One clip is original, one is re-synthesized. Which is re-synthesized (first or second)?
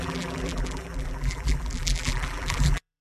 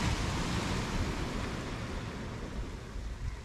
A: first